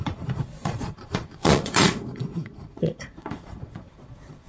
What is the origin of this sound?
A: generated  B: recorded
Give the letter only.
A